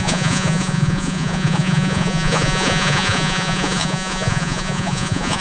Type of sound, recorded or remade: remade